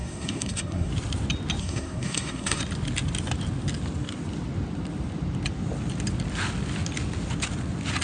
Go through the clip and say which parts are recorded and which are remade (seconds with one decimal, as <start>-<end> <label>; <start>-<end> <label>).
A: 0.0-0.9 remade; 0.9-1.6 recorded; 1.6-2.6 remade; 2.6-8.0 recorded